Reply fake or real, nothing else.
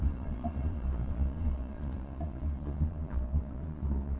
fake